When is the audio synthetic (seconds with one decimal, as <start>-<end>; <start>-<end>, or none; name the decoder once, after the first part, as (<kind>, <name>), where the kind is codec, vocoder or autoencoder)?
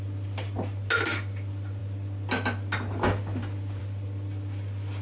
none